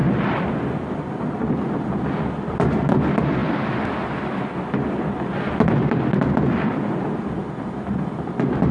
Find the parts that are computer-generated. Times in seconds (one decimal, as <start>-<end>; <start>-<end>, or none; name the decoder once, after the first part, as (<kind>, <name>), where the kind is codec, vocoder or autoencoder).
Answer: 0.0-1.5 (vocoder, BigVGAN v2)